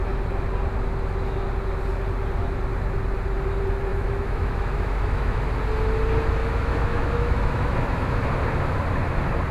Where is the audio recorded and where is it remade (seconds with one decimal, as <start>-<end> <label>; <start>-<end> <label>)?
0.0-3.9 recorded; 3.9-5.5 remade; 5.5-6.4 recorded; 6.4-8.2 remade; 8.2-9.5 recorded